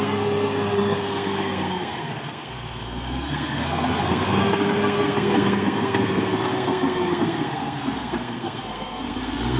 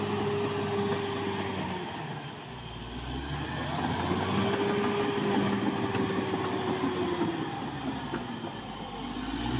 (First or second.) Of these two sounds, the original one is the second